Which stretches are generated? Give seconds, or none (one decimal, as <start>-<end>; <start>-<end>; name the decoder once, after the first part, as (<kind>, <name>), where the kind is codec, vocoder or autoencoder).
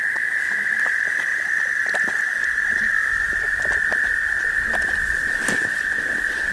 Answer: none